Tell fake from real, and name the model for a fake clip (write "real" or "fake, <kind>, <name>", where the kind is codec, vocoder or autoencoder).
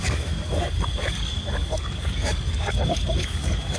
fake, codec, DAC